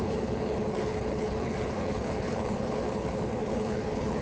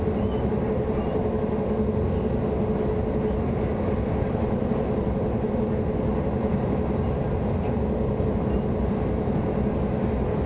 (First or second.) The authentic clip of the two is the second